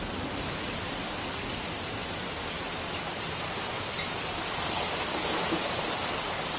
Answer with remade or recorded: recorded